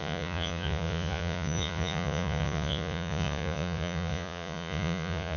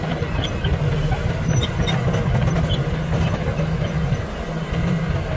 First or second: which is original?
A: second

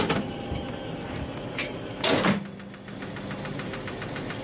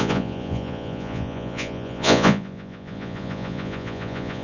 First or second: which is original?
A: first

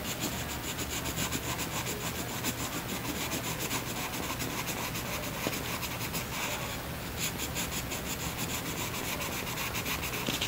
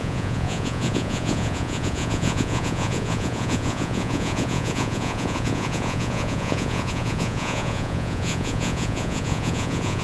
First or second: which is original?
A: first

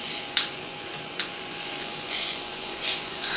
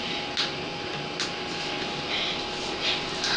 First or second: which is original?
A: second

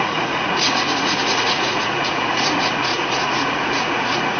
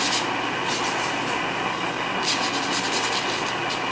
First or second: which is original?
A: second